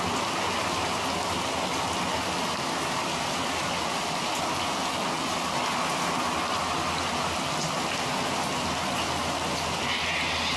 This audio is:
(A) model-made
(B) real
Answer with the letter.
B